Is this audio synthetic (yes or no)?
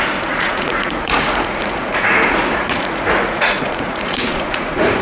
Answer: yes